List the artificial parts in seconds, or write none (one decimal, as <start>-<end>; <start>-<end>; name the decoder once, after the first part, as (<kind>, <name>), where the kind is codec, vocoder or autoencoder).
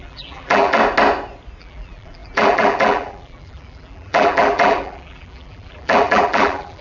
0.0-0.8 (vocoder, BigVGAN v2); 1.6-6.8